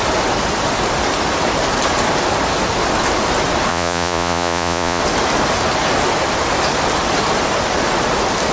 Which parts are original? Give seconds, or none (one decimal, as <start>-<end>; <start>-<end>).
0.0-3.7; 5.0-8.5